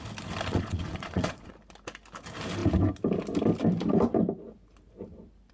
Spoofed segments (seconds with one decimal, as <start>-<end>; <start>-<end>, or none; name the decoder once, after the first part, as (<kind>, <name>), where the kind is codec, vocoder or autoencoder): 0.5-1.5 (vocoder, Vocos)